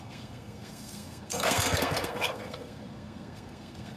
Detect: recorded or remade remade